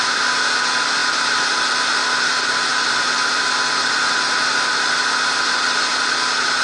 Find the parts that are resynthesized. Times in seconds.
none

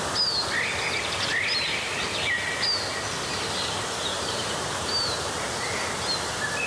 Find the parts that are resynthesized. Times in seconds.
4.1-4.7 (vocoder, BigVGAN v2)

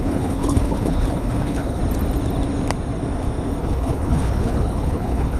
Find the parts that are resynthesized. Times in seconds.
0.0-1.8 (codec, HILCodec); 3.6-5.4

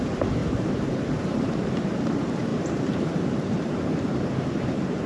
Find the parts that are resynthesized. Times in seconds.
0.0-5.1 (vocoder, BigVGAN v2)

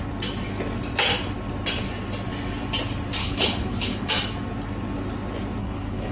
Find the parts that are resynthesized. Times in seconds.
3.2-4.1 (codec, HILCodec); 5.6-6.1